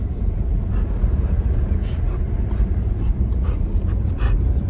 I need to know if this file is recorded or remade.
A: remade